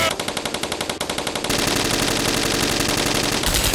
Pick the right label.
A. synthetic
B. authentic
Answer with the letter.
B